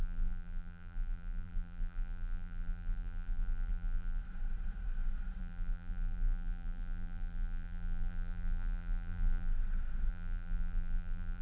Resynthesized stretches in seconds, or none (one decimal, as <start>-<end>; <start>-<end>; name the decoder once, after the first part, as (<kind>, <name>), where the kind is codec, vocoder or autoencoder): 0.0-4.2 (vocoder, BigVGAN v2); 5.4-9.5; 10.1-11.4